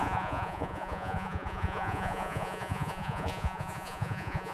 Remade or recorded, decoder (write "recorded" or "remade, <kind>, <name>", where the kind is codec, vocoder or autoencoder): remade, vocoder, Vocos